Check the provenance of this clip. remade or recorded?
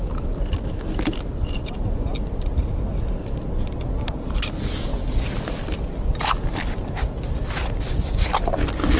recorded